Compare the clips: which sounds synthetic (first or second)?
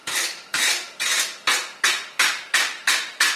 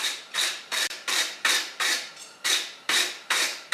second